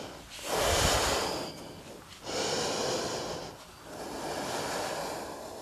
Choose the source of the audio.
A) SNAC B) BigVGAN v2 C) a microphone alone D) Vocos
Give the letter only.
C